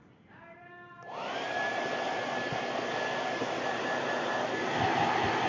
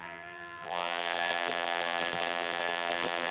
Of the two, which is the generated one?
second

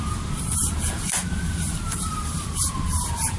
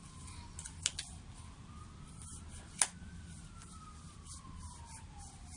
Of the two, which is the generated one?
first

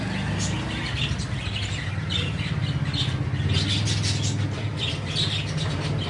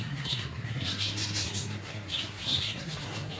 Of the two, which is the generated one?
second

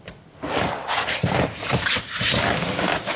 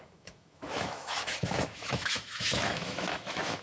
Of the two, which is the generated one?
second